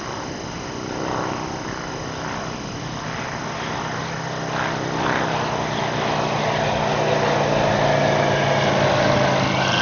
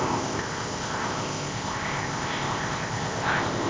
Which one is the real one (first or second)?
first